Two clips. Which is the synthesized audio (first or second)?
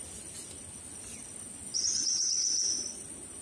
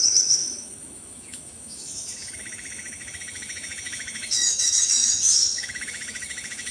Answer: second